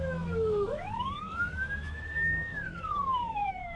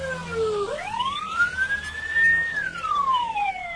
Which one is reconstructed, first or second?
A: first